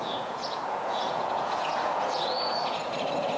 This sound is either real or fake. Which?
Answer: fake